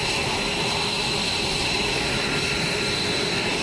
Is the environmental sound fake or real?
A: real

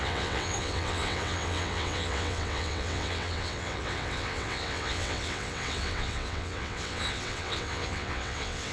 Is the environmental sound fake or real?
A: fake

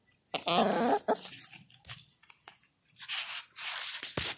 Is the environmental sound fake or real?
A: real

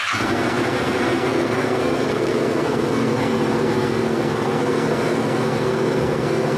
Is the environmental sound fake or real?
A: fake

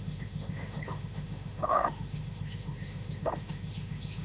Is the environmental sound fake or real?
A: fake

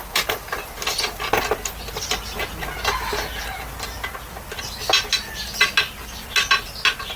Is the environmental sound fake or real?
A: real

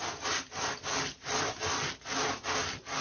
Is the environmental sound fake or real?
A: real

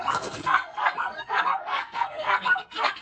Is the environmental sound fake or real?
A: fake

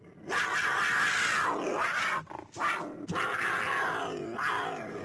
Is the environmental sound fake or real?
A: real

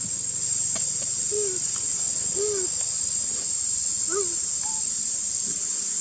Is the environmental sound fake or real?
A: real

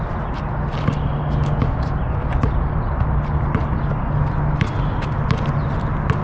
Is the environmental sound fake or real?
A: real